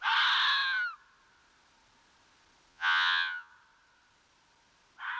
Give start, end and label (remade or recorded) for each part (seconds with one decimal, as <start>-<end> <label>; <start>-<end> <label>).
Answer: 0.0-2.7 recorded; 2.7-3.5 remade; 3.5-5.2 recorded